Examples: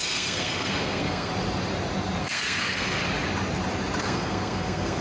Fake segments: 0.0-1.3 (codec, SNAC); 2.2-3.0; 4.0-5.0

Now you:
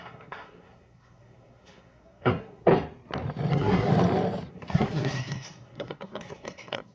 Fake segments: 0.0-2.7 (codec, SNAC); 3.5-3.9; 4.5-6.9